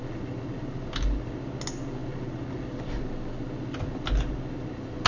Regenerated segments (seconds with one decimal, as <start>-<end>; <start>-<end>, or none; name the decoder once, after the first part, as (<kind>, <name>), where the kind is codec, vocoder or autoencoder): none

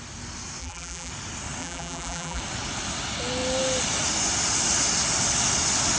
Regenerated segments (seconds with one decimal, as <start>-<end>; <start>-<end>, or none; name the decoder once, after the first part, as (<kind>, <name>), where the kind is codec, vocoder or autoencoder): 0.6-1.1 (vocoder, BigVGAN v2); 1.6-2.4

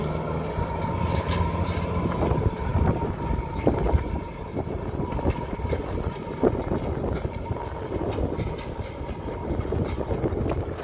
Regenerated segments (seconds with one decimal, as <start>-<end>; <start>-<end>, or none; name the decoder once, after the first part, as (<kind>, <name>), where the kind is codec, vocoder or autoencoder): none

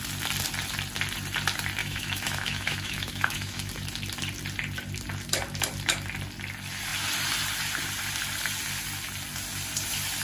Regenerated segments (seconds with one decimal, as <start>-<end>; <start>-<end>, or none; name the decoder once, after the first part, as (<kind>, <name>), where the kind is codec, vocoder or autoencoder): 1.8-3.7 (autoencoder, DAC-VAE)